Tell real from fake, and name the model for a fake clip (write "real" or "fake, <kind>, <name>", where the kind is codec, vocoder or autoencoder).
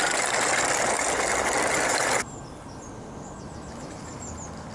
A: real